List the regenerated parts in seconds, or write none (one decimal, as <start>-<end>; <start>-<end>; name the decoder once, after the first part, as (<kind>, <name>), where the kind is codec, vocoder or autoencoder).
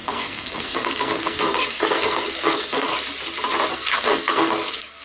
0.0-2.9 (codec, SNAC); 3.7-5.0